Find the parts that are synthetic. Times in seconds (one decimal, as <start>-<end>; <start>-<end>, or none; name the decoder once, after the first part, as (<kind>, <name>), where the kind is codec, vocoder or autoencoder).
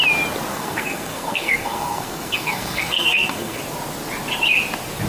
0.5-3.6 (codec, SNAC)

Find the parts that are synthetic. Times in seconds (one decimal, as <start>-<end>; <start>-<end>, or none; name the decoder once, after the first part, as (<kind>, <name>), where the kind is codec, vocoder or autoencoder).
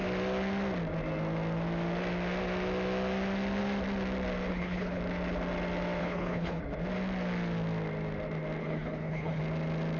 4.5-5.0 (codec, HILCodec); 6.0-6.6; 8.6-9.4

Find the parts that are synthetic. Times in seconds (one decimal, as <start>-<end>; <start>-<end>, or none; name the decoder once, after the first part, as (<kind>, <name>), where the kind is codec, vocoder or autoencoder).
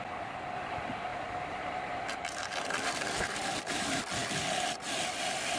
1.1-4.0 (vocoder, BigVGAN v2)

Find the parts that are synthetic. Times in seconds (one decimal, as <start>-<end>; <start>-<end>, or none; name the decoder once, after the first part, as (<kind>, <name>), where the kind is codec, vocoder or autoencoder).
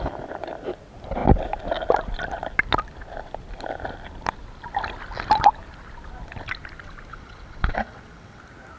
7.1-8.4 (vocoder, WaveNeXt)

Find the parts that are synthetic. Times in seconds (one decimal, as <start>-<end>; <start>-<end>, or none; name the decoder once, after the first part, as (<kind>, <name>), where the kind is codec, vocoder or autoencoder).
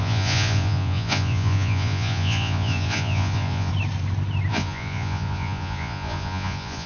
0.0-3.7 (vocoder, Vocos); 4.5-6.9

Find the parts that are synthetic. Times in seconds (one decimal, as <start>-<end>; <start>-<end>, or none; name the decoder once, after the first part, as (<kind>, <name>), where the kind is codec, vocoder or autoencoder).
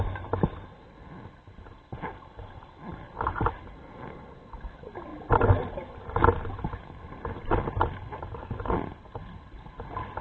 none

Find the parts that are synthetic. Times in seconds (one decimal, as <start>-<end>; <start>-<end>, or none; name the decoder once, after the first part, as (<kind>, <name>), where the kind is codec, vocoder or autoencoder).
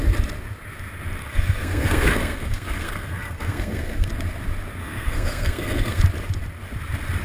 1.2-4.1 (codec, SNAC); 4.8-6.0